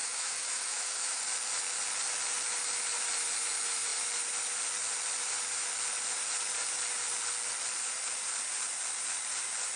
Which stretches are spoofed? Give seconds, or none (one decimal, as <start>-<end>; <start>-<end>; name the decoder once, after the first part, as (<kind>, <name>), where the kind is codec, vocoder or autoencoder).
0.0-1.2 (autoencoder, DAC-VAE)